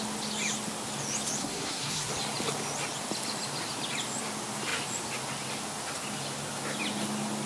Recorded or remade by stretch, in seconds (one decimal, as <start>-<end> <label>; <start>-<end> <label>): 0.0-1.4 recorded; 1.4-2.1 remade; 2.1-7.5 recorded